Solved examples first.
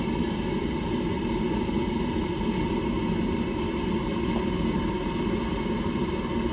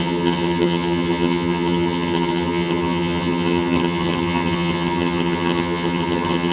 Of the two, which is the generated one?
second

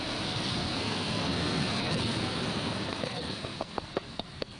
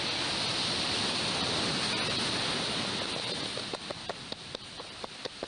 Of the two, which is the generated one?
first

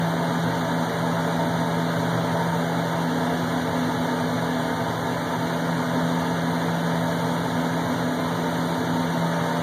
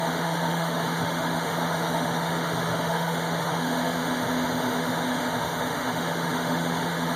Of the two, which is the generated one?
second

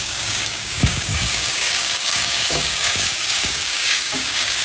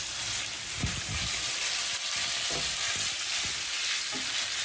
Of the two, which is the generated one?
first